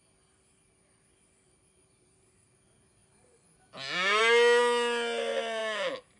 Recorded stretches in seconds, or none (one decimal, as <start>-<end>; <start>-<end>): 0.0-6.2